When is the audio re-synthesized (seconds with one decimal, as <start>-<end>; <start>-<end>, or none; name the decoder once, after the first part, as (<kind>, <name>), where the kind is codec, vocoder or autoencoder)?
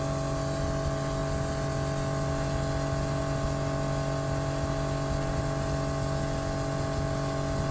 none